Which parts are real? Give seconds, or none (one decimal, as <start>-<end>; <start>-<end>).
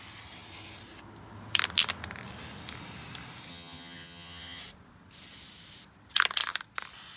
0.0-3.5; 4.6-7.2